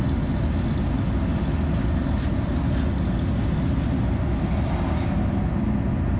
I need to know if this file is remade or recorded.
recorded